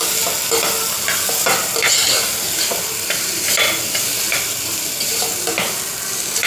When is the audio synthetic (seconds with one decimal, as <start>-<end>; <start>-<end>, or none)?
2.0-5.5